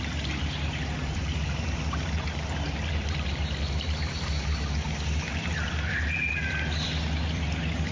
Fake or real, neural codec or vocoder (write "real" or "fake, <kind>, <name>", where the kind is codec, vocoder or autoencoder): real